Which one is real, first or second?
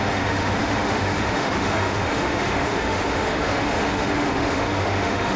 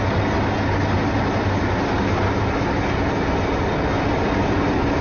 second